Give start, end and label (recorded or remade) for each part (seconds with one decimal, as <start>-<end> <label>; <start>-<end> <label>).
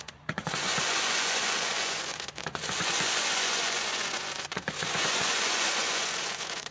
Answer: 0.0-6.7 remade